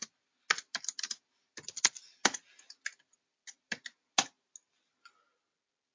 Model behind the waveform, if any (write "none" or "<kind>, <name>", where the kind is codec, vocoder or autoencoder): none